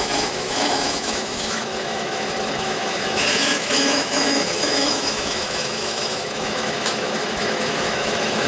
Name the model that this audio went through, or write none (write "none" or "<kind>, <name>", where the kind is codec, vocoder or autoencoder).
autoencoder, DAC-VAE